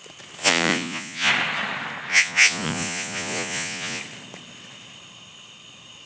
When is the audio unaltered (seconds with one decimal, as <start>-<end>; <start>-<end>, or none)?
0.0-0.4; 1.3-2.1; 4.0-6.1